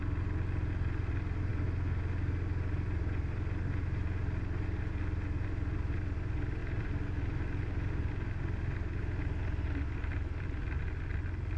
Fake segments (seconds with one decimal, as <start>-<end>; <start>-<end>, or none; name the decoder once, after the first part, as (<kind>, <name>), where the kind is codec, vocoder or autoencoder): none